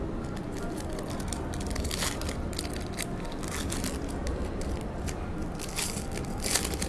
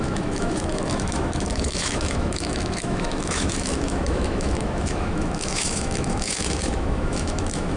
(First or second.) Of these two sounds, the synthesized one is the second